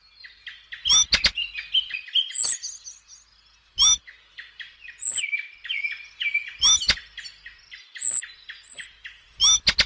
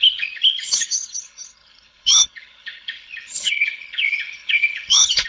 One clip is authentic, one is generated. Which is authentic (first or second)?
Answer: first